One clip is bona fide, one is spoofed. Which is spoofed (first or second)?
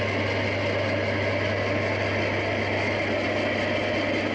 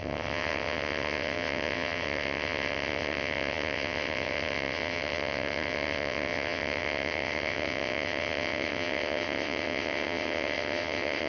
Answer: second